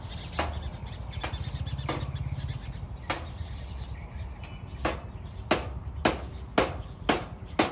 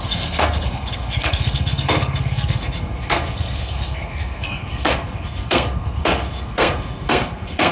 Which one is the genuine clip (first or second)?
first